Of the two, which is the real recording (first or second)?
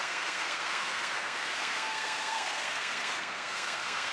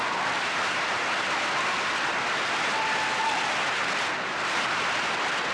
second